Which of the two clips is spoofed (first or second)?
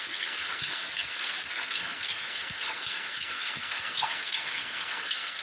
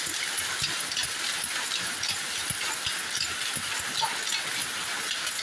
first